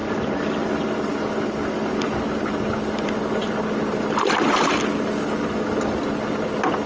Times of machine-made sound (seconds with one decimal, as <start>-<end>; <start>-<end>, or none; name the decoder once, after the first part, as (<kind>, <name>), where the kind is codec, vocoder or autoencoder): none